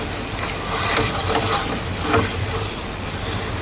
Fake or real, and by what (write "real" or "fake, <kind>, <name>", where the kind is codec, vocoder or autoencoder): real